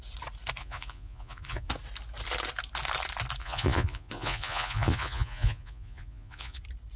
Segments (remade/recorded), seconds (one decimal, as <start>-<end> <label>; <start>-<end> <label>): 0.0-0.6 recorded; 0.6-1.7 remade; 1.7-3.4 recorded; 3.4-6.6 remade; 6.6-7.0 recorded